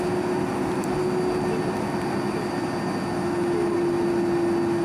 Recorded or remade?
recorded